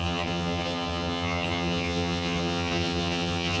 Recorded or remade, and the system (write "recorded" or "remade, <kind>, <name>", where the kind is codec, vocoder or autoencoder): remade, vocoder, HiFi-GAN